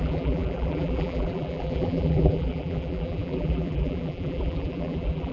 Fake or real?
fake